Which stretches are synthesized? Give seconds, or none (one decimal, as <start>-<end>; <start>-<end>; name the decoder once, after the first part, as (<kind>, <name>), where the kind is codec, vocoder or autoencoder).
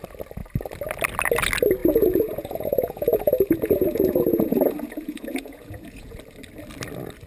1.8-6.2 (vocoder, Vocos)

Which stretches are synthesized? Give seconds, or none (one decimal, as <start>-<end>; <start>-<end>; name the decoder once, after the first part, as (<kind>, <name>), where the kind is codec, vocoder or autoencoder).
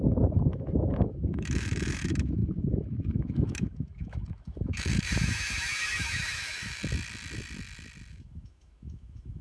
0.0-6.8 (autoencoder, DAC-VAE); 8.1-9.4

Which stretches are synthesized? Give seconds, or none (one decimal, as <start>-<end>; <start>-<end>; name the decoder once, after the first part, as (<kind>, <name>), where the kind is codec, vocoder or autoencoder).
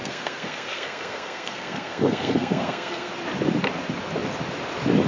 0.0-3.1 (codec, SNAC)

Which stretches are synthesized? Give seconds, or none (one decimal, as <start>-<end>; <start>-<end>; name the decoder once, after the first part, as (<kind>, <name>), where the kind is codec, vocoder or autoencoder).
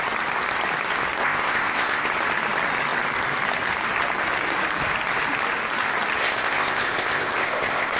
1.2-2.1 (codec, ZipCodec); 6.2-8.0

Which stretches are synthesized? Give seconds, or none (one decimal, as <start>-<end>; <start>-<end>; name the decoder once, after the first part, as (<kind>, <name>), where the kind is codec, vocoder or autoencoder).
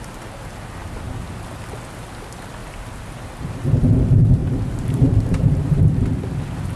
0.8-1.3 (vocoder, BigVGAN v2); 2.6-3.8; 4.4-5.8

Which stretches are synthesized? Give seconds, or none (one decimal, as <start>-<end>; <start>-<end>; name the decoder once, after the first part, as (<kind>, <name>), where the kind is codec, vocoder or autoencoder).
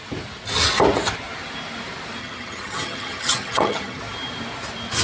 2.2-4.0 (vocoder, HiFi-GAN)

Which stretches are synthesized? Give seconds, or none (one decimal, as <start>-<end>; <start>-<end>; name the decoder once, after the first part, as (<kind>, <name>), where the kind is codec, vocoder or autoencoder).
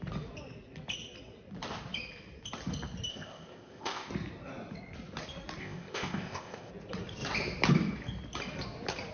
3.1-4.1 (codec, ZipCodec); 5.6-6.7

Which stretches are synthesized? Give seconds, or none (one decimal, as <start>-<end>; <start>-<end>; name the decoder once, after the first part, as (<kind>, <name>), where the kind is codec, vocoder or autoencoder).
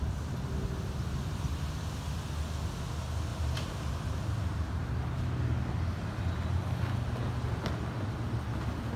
3.3-3.9 (vocoder, BigVGAN v2)